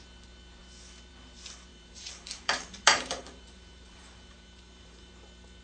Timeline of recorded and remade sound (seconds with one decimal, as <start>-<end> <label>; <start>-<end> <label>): 0.0-1.7 recorded; 1.7-5.1 remade; 5.1-5.6 recorded